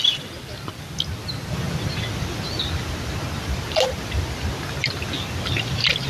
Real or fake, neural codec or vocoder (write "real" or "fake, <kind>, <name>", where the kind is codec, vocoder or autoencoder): real